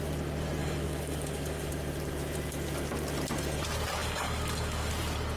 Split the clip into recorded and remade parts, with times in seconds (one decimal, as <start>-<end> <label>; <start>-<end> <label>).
0.0-0.6 recorded; 0.6-1.7 remade; 1.7-4.0 recorded; 4.0-4.9 remade; 4.9-5.4 recorded

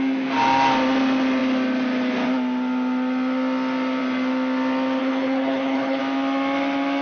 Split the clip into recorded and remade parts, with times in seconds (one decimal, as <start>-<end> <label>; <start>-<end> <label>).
0.0-5.0 recorded; 5.0-6.0 remade; 6.0-7.0 recorded

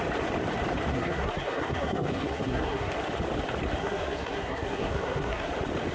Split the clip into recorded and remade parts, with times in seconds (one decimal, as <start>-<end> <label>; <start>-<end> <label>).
0.0-0.9 recorded; 0.9-2.9 remade; 2.9-3.8 recorded; 3.8-5.5 remade; 5.5-5.9 recorded

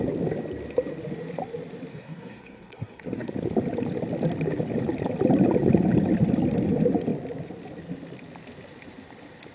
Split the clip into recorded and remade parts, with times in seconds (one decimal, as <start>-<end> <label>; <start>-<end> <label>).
0.0-1.9 recorded; 1.9-3.3 remade; 3.3-9.5 recorded

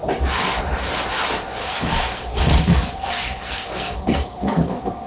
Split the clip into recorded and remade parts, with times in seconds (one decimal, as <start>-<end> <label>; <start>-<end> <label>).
0.0-1.6 recorded; 1.6-5.1 remade